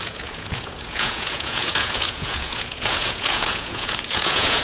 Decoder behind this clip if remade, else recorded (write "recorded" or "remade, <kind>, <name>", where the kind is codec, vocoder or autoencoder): remade, vocoder, Vocos